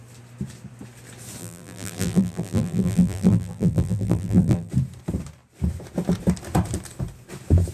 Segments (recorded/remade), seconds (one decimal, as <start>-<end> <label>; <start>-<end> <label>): 0.0-1.4 recorded; 1.4-4.7 remade; 4.7-7.7 recorded